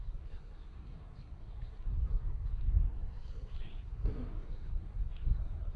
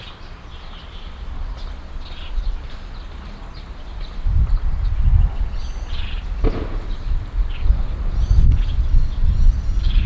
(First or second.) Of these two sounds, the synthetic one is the first